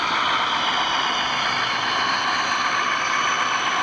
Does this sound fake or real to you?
real